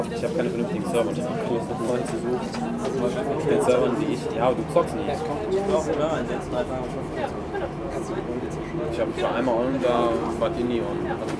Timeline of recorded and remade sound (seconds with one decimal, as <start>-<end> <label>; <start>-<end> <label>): 0.0-11.4 recorded

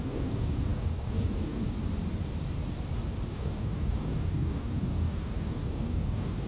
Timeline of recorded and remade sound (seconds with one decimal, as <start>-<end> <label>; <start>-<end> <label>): 0.0-1.6 remade; 1.6-3.3 recorded; 3.3-6.5 remade

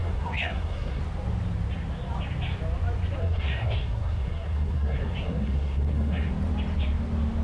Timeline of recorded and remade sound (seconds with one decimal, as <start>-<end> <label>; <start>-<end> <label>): 0.0-1.0 remade; 1.0-3.2 recorded; 3.2-6.3 remade; 6.3-7.4 recorded

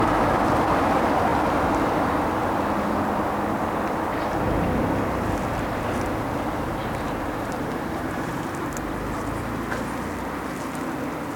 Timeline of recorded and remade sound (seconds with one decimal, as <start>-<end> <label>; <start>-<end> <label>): 0.0-6.8 recorded; 6.8-9.4 remade; 9.4-11.4 recorded

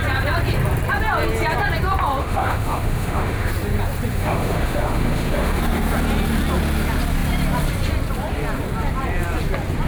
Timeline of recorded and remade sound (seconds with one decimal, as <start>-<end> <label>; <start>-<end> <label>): 0.0-2.2 recorded; 2.2-3.5 remade; 3.5-4.1 recorded; 4.1-5.6 remade; 5.6-9.9 recorded

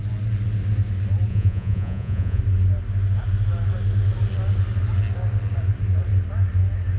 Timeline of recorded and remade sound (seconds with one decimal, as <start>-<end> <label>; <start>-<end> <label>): 0.0-1.3 recorded; 1.3-2.4 remade; 2.4-7.0 recorded